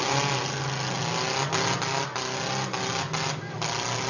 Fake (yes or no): no